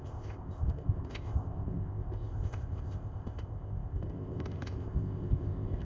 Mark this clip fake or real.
fake